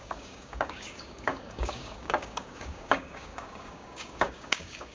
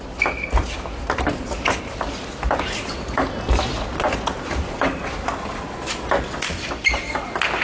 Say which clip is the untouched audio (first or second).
second